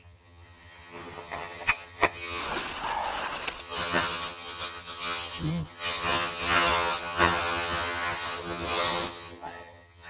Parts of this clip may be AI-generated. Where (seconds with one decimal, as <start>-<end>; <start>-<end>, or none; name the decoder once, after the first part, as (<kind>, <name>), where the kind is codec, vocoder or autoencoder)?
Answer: 0.0-2.4 (vocoder, HiFi-GAN); 3.6-10.1

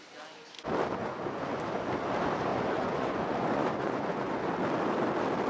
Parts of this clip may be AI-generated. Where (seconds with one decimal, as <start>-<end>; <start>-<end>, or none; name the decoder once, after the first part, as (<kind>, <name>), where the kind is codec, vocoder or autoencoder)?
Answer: 1.0-1.6 (vocoder, Vocos); 2.5-4.4